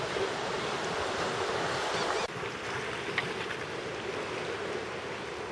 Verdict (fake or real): real